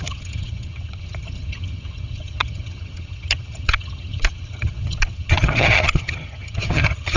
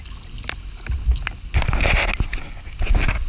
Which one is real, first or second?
second